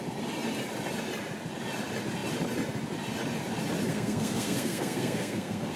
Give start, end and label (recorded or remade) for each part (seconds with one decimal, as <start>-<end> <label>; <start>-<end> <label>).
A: 0.0-3.9 recorded; 3.9-5.8 remade